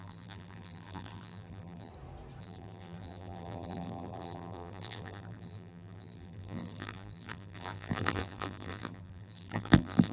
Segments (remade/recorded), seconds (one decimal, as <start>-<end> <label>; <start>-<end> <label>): 0.0-1.9 remade; 1.9-2.4 recorded; 2.4-10.1 remade